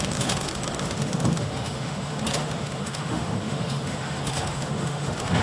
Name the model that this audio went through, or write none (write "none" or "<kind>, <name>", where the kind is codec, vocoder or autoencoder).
autoencoder, DAC-VAE